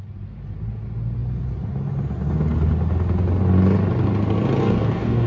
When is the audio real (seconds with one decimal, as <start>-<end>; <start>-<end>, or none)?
0.0-4.6